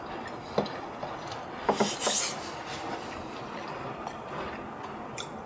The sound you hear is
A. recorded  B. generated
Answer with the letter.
A